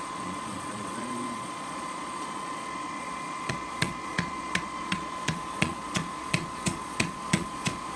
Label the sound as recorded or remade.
remade